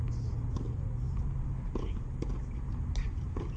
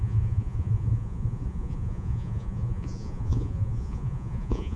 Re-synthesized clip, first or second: second